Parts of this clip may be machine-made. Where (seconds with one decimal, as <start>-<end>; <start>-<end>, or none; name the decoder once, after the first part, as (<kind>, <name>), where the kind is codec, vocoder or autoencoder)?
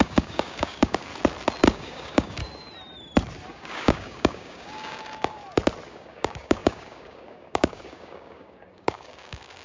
0.0-1.1 (codec, DAC); 1.7-2.4; 3.5-5.4; 5.9-9.6